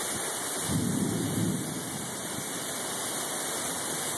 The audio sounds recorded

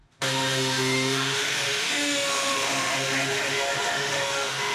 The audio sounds remade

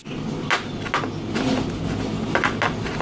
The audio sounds recorded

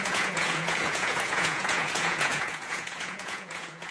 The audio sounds remade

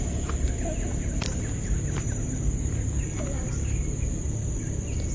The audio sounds recorded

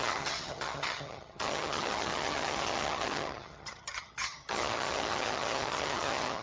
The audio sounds remade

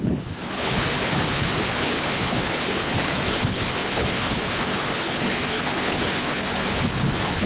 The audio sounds remade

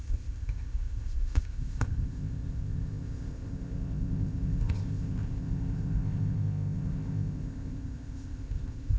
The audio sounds remade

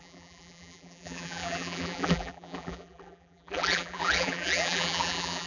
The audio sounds remade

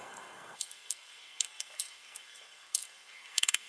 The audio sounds remade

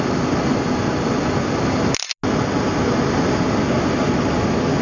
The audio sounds recorded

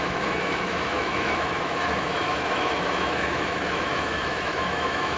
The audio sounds remade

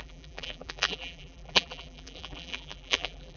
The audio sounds remade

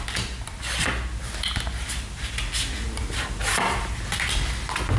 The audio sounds recorded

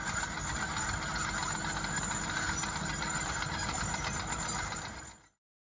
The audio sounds recorded